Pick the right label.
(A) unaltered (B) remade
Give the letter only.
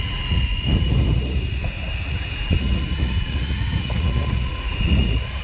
B